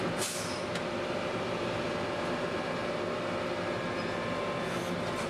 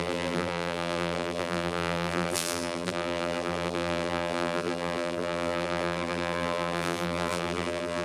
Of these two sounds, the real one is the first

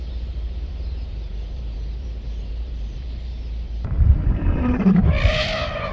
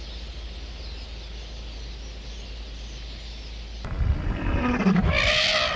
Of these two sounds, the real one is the second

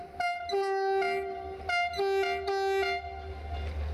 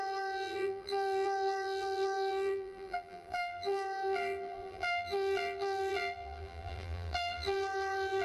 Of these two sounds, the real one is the first